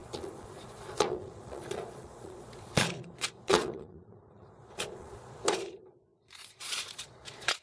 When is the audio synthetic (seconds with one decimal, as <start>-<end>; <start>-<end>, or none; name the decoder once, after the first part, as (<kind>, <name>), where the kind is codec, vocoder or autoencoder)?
0.0-7.6 (vocoder, Vocos)